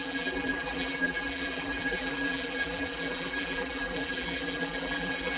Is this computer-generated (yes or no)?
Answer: yes